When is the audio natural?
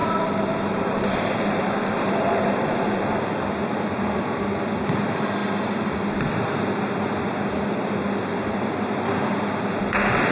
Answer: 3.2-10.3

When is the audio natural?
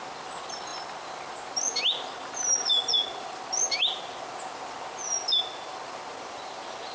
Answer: 0.0-6.9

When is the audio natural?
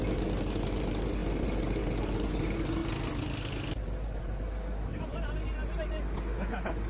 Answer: 0.0-6.9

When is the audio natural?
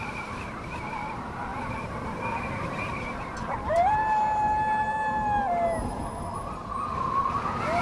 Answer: 1.5-2.3; 4.0-7.1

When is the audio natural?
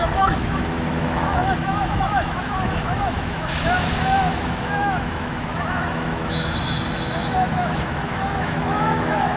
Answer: none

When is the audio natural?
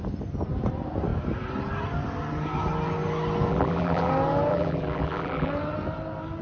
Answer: 0.0-3.5; 4.1-4.5; 5.5-6.4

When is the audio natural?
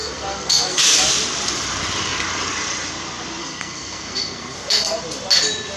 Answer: 1.0-3.4; 5.0-5.8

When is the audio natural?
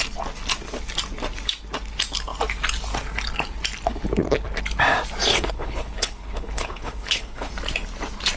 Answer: 0.0-5.3; 7.5-8.4